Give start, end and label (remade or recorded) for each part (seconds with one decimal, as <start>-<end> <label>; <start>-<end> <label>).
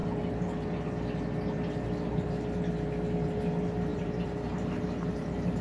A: 0.0-3.9 recorded; 3.9-5.6 remade